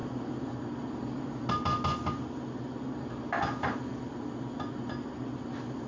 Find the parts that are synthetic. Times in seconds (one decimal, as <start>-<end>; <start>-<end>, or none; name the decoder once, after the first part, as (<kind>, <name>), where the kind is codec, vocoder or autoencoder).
none